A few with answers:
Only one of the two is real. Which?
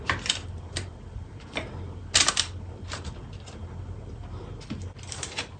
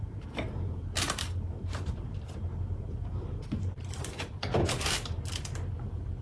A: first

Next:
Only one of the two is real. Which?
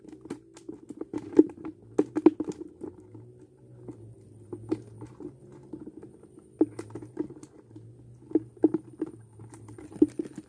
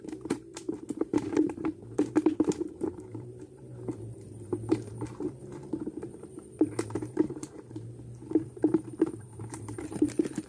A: first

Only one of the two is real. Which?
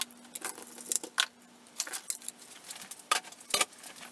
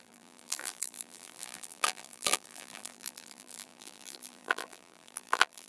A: first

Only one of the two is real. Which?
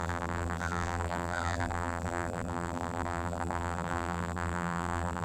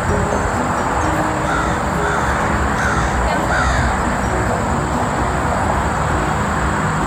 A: second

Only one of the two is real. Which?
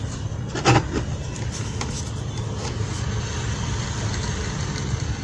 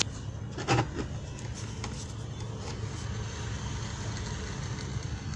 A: second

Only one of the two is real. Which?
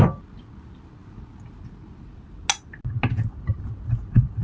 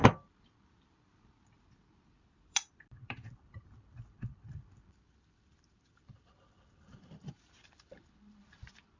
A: first